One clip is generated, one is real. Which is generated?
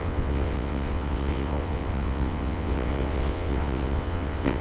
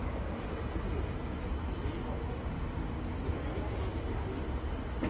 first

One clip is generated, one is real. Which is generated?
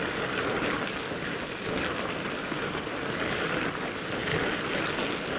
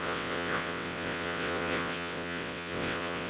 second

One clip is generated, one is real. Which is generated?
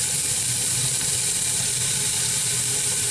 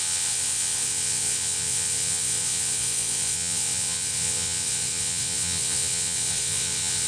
second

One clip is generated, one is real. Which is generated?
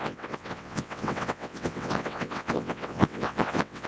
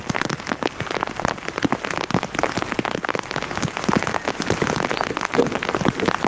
first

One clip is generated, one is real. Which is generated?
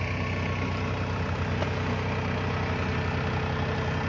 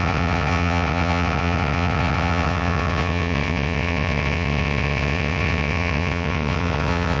second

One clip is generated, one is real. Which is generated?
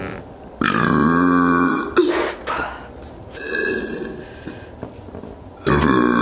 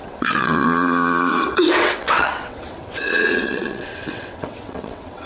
second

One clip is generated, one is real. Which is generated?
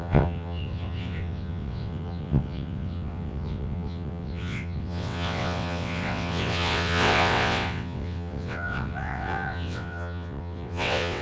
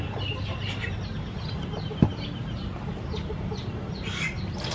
first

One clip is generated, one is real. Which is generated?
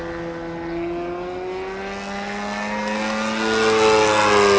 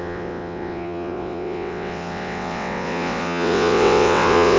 second